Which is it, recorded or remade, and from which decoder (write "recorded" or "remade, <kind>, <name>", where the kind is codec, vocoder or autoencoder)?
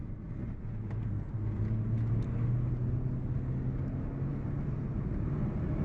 recorded